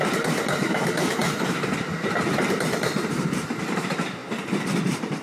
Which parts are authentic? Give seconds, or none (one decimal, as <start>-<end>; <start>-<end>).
4.2-4.8